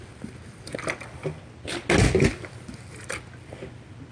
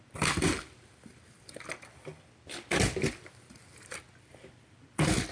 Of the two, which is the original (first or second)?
first